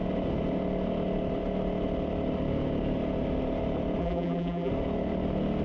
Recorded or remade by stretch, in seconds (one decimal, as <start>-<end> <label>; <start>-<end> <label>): 0.0-4.0 recorded; 4.0-4.7 remade; 4.7-5.6 recorded